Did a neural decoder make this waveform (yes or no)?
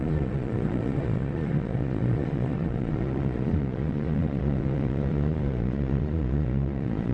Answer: yes